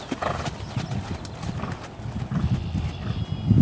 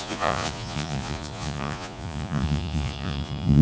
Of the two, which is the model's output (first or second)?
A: second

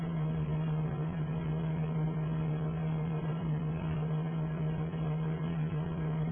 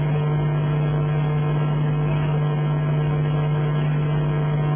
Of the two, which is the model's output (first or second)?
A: first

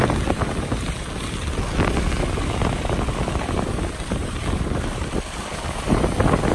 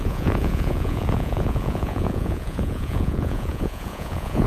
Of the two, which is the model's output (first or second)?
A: second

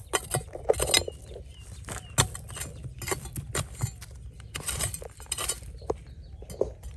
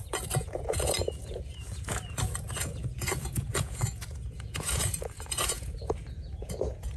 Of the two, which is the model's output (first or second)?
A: second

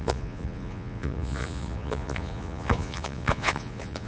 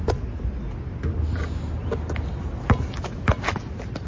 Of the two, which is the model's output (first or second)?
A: first